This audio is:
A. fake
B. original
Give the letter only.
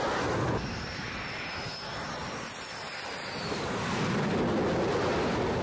B